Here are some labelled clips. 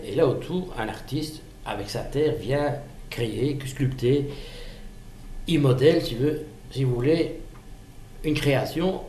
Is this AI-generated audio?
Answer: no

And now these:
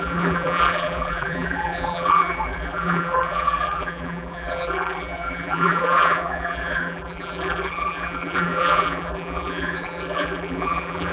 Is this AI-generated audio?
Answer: yes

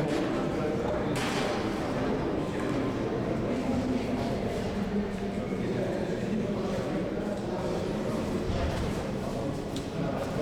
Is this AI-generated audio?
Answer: yes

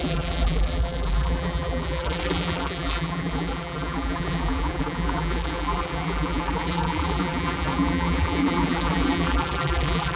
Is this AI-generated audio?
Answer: yes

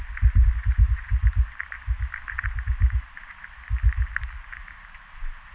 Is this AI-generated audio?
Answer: no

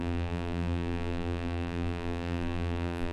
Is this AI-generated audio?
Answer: yes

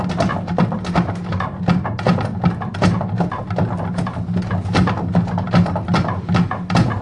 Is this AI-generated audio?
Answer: no